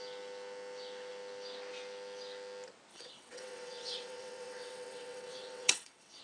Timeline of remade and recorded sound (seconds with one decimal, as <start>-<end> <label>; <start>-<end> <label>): 0.0-2.9 recorded; 2.9-6.2 remade